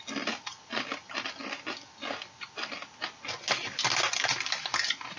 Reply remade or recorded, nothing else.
recorded